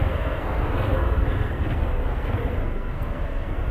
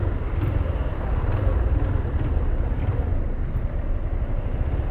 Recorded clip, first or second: second